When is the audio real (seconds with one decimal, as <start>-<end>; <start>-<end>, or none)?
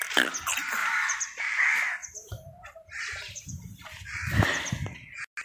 0.0-0.8; 1.4-2.0; 3.5-5.4